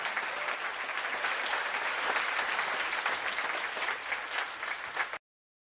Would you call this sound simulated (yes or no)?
no